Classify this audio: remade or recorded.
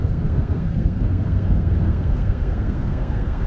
remade